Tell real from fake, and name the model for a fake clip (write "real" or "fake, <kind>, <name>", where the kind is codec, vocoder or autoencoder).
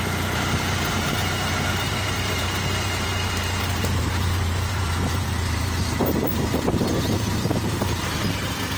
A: fake, vocoder, BigVGAN v2